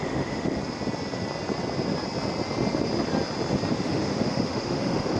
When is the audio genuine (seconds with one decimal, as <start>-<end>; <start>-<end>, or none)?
0.6-3.7